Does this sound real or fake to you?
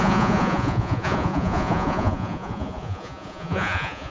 fake